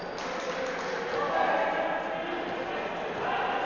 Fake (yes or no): no